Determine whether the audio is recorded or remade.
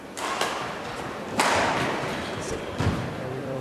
remade